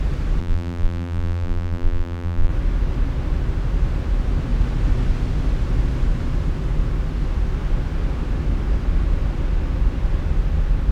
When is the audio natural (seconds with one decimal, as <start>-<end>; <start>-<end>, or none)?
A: 0.0-0.4; 2.5-10.9